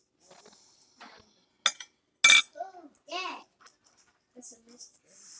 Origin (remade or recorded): recorded